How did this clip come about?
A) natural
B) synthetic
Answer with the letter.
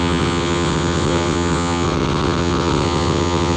B